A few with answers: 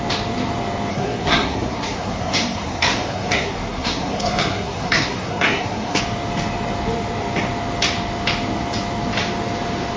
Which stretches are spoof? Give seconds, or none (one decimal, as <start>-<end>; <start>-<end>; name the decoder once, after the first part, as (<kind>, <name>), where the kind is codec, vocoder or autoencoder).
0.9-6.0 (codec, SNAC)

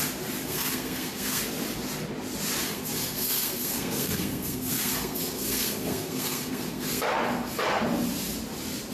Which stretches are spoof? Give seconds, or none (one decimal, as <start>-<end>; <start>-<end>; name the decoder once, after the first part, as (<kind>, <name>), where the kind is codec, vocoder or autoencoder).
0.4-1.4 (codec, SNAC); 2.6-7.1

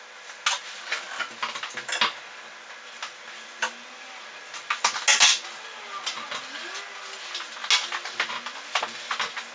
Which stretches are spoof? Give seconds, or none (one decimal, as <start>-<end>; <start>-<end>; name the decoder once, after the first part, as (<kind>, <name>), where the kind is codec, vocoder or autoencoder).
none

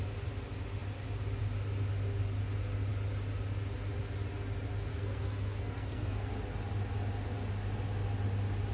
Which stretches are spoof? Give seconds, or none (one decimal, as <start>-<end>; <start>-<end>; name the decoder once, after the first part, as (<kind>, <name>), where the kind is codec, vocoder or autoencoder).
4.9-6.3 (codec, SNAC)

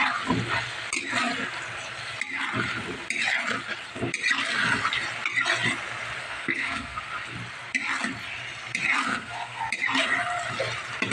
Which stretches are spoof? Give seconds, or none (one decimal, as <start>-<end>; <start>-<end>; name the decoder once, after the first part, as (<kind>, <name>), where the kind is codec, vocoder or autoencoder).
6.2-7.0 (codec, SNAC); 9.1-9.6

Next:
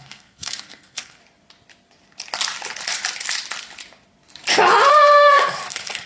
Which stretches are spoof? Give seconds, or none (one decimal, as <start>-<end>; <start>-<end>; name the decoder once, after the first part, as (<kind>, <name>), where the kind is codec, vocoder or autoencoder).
0.0-1.2 (codec, SNAC); 4.9-6.1

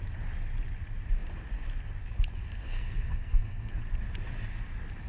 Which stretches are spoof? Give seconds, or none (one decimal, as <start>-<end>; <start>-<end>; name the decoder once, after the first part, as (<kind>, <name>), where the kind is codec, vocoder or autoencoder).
2.6-3.8 (codec, SNAC)